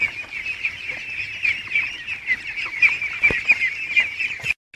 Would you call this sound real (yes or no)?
yes